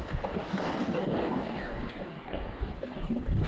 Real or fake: fake